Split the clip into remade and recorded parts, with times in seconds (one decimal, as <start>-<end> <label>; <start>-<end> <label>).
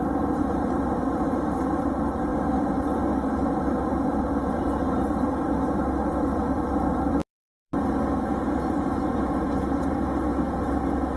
0.0-7.2 remade; 7.2-9.9 recorded; 9.9-10.3 remade; 10.3-11.2 recorded